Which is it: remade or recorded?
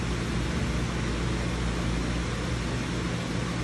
recorded